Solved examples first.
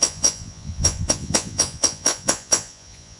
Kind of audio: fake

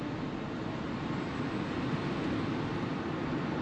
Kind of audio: real